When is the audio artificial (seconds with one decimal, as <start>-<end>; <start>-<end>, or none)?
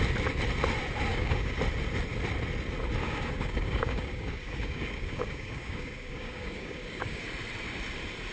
1.1-1.6; 3.0-7.2